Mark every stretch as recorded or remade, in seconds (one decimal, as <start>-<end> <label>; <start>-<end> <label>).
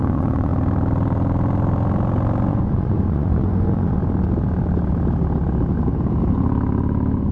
0.0-0.5 remade; 0.5-2.5 recorded; 2.5-4.0 remade; 4.0-7.3 recorded